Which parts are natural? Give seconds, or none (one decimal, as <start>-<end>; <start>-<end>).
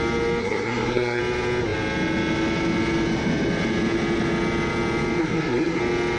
0.0-0.4; 1.2-5.2; 5.8-6.2